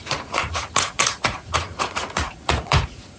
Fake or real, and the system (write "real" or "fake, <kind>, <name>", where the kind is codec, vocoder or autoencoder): fake, vocoder, Vocos